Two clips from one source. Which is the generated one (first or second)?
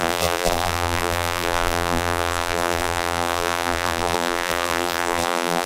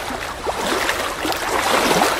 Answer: first